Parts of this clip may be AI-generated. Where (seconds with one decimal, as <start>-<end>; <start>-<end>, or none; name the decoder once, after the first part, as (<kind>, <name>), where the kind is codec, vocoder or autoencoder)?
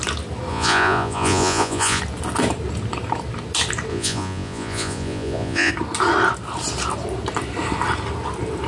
0.5-2.0 (vocoder, Vocos); 3.9-5.7